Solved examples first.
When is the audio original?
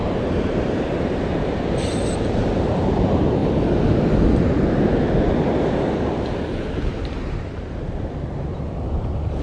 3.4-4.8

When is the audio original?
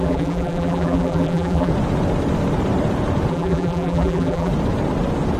1.7-3.3; 4.5-5.4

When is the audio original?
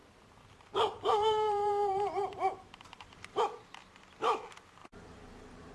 3.4-4.8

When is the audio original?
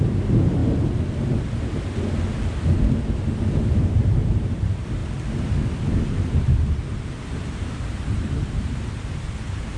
0.6-3.4; 5.0-7.1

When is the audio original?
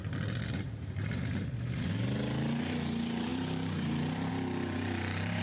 0.0-0.5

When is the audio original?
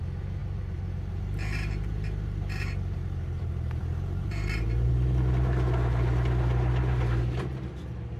0.0-0.4; 4.9-8.2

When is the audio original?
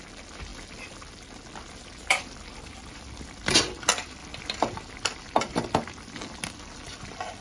0.0-7.4